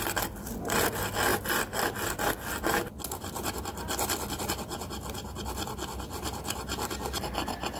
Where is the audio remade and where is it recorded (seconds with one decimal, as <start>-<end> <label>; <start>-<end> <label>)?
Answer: 0.0-7.8 recorded